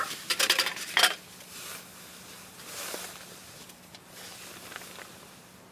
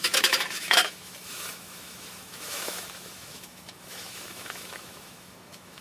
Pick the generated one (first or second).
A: second